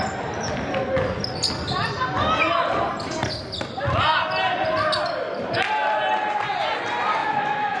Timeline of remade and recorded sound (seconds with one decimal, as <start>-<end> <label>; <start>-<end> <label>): 0.0-7.2 recorded; 7.2-7.8 remade